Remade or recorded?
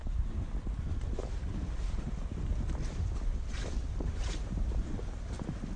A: recorded